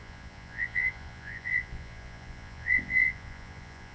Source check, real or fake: fake